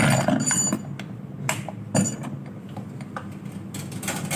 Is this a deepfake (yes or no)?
no